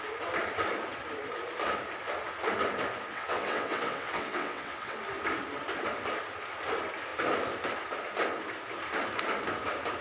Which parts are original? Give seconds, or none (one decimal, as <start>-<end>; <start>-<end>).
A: 0.0-3.1; 5.0-10.0